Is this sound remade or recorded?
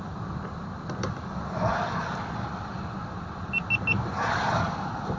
recorded